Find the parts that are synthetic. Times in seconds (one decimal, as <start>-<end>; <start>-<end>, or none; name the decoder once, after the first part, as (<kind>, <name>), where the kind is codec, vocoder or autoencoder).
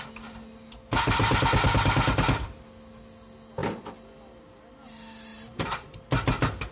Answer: 5.3-6.7 (vocoder, BigVGAN v2)